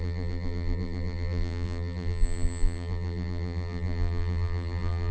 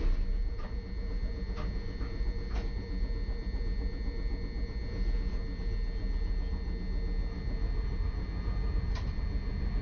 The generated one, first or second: first